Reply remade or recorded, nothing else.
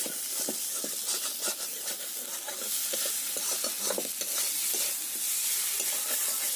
recorded